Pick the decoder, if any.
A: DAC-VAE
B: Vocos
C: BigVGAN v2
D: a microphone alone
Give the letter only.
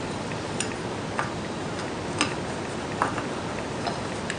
D